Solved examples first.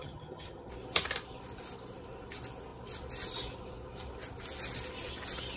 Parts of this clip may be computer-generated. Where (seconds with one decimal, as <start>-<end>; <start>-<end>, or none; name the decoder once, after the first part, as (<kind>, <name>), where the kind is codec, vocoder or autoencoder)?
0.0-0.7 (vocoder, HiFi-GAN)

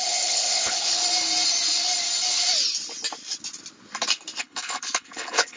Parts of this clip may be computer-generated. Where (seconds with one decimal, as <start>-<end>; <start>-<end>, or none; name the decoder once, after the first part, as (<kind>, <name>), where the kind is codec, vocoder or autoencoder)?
0.0-1.0 (codec, HILCodec); 4.4-5.6

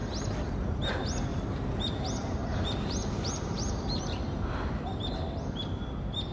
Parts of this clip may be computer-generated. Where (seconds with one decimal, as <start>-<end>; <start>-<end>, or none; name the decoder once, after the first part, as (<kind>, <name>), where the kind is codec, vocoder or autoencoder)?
1.3-5.1 (vocoder, BigVGAN v2)